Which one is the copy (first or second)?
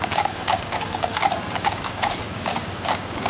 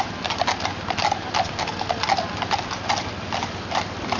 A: first